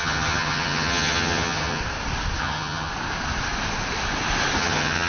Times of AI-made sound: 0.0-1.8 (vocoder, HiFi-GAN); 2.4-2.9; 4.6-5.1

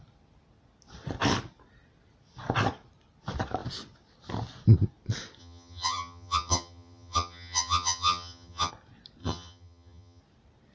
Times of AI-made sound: 5.4-8.7 (vocoder, HiFi-GAN); 9.2-10.2